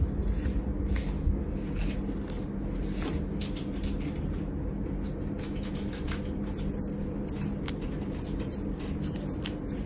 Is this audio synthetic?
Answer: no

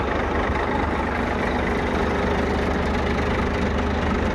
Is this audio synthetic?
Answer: no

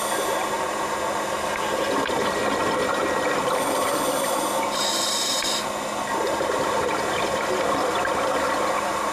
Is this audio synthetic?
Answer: no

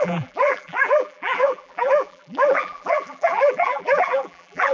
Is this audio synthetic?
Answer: yes